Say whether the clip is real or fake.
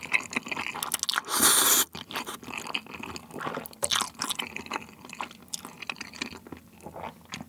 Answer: real